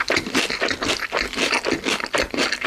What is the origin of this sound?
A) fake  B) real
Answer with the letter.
B